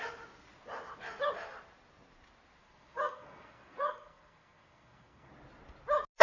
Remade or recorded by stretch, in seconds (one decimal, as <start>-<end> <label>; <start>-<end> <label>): 0.0-2.6 recorded; 2.6-5.3 remade; 5.3-6.2 recorded

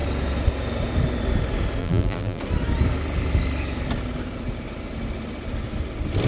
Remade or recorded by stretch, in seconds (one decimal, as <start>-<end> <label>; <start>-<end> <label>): 0.0-1.8 recorded; 1.8-2.4 remade; 2.4-6.3 recorded

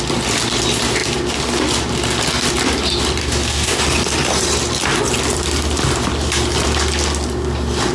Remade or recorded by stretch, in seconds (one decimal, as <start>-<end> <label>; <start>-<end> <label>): 0.0-3.2 recorded; 3.2-3.8 remade; 3.8-7.9 recorded

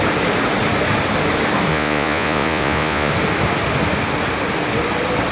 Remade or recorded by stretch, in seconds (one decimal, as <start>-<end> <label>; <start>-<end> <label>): 0.0-1.7 recorded; 1.7-3.1 remade; 3.1-5.3 recorded

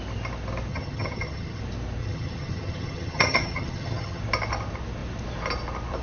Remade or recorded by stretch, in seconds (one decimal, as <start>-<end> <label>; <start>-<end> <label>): 0.0-0.7 recorded; 0.7-1.6 remade; 1.6-2.0 recorded; 2.0-4.2 remade; 4.2-6.0 recorded

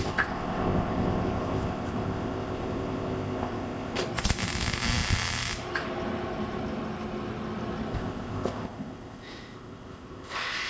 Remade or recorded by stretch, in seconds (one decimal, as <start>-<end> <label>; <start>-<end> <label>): 0.0-4.0 remade; 4.0-7.9 recorded; 7.9-10.7 remade

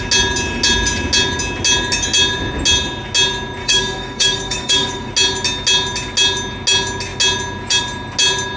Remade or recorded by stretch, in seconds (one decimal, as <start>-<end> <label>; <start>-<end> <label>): 0.0-3.6 recorded; 3.6-5.1 remade; 5.1-8.6 recorded

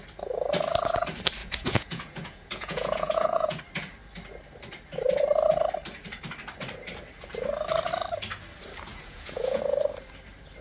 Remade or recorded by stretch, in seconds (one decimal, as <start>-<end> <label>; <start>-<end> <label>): 0.0-1.4 recorded; 1.4-3.6 remade; 3.6-8.9 recorded; 8.9-9.6 remade; 9.6-10.6 recorded